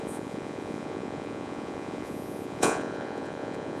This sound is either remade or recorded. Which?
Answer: remade